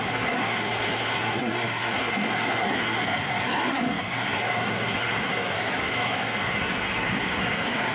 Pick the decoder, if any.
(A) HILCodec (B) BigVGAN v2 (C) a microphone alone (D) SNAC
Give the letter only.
D